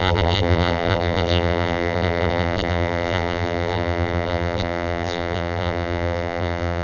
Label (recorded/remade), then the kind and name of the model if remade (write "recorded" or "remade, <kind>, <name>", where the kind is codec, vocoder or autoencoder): remade, vocoder, BigVGAN v2